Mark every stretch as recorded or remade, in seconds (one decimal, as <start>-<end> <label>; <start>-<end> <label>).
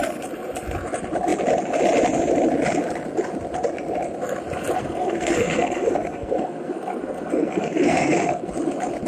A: 0.0-4.8 recorded; 4.8-8.5 remade; 8.5-9.1 recorded